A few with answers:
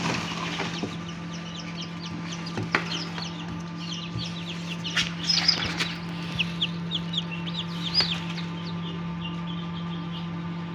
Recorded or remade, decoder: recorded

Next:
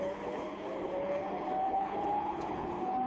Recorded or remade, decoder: remade, codec, HILCodec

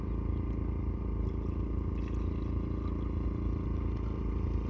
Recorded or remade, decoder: recorded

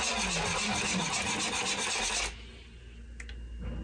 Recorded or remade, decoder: recorded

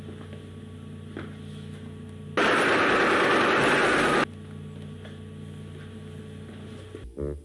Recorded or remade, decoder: recorded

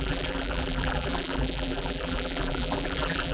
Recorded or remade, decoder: remade, vocoder, BigVGAN v2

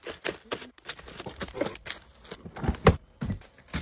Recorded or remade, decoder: recorded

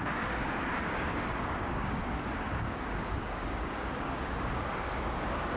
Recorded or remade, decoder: remade, codec, DAC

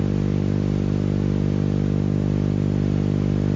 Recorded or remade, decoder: recorded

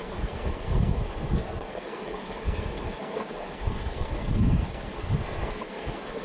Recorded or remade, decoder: remade, codec, SNAC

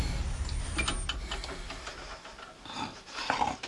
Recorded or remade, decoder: recorded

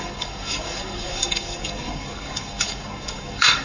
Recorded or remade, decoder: remade, codec, DAC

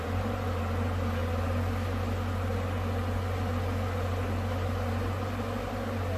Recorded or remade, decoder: recorded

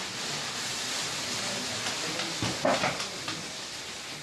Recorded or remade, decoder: recorded